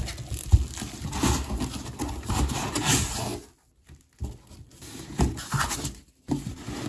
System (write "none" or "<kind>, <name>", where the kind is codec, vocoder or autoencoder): none